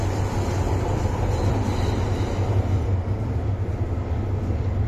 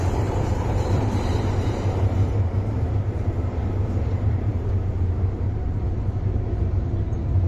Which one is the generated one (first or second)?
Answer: second